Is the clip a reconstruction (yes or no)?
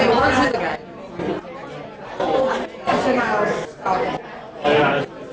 no